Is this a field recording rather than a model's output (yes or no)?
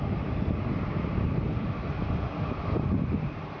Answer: no